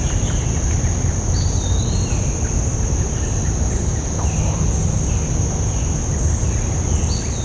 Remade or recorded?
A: recorded